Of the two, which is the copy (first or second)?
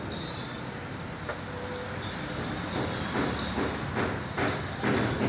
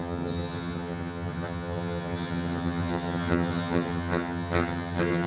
second